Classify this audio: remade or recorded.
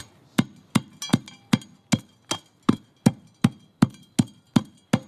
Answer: recorded